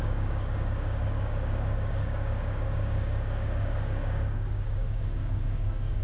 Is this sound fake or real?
fake